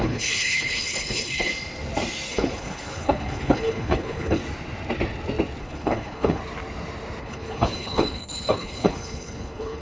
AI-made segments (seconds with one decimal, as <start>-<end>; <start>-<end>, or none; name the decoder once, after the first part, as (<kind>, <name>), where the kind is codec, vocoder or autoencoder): 0.0-1.5 (codec, HILCodec); 2.3-4.4; 5.6-6.4; 7.2-9.8